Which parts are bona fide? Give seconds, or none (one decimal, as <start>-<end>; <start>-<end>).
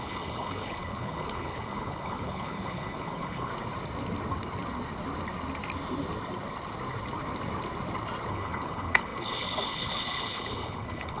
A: 3.5-8.3